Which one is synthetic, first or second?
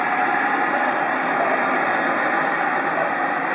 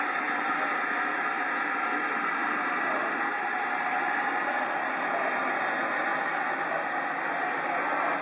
first